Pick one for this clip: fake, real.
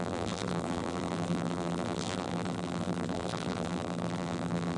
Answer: fake